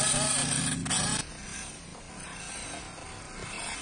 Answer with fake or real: real